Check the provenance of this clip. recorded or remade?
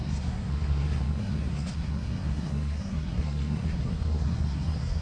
remade